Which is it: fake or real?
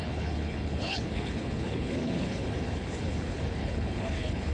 fake